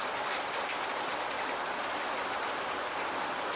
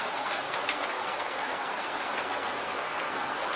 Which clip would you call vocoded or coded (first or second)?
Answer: second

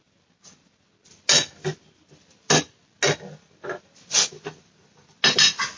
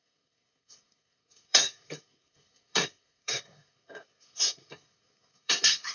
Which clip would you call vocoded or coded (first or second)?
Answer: second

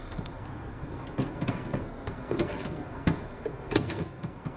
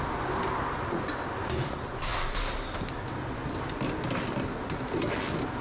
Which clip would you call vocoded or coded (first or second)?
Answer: first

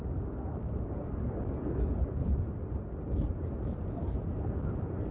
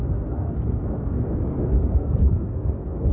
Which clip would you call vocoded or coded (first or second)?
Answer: second